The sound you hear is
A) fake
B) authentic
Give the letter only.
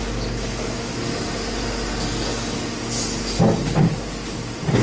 B